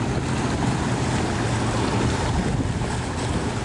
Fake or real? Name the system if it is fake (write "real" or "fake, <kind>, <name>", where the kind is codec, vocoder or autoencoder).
real